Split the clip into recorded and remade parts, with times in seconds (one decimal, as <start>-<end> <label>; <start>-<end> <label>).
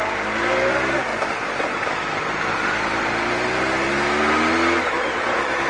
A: 0.0-5.7 recorded